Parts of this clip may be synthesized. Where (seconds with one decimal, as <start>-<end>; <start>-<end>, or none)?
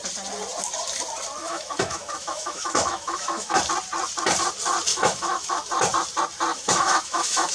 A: 1.4-3.6; 4.9-5.7; 6.5-7.5